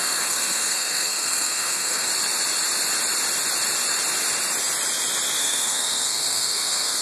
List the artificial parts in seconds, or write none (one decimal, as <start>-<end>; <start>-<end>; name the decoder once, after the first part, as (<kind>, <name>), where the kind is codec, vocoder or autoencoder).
0.0-2.1 (codec, SNAC); 5.4-7.0